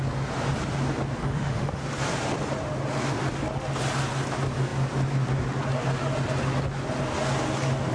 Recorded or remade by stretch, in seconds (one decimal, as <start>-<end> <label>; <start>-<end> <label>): 0.0-1.2 recorded; 1.2-1.8 remade; 1.8-7.9 recorded